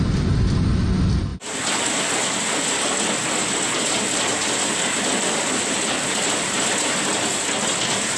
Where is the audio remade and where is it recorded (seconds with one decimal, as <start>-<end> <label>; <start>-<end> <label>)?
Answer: 0.0-8.2 recorded